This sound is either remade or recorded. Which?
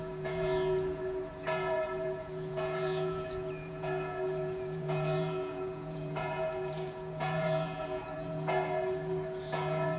remade